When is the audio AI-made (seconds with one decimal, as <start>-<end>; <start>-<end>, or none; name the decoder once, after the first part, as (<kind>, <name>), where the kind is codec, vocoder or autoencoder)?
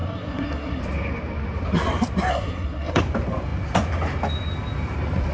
0.0-0.8 (codec, SNAC); 2.3-3.0